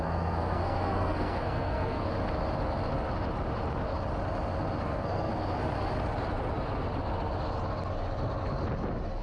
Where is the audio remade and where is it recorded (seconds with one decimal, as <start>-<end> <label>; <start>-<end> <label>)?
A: 0.0-2.1 remade; 2.1-4.8 recorded; 4.8-5.3 remade; 5.3-9.2 recorded